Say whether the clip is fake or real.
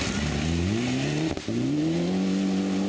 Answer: real